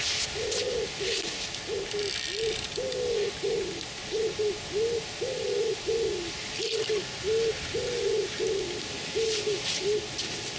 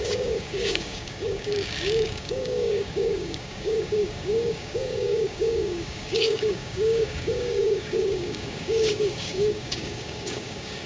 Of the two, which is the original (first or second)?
first